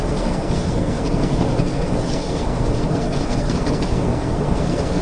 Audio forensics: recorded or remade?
remade